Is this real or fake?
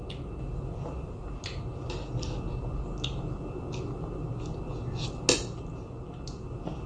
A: real